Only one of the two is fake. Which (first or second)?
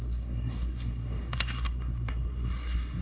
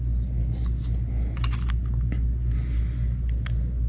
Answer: first